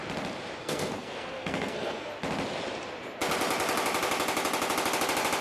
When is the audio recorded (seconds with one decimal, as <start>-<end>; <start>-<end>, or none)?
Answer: 0.0-0.6; 2.1-5.4